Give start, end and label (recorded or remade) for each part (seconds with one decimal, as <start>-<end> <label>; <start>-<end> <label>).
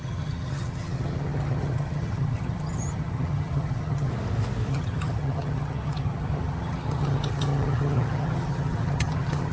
0.0-4.1 remade; 4.1-4.7 recorded; 4.7-9.5 remade